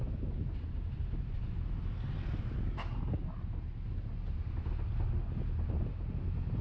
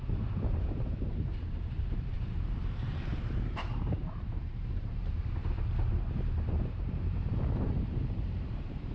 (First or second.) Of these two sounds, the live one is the first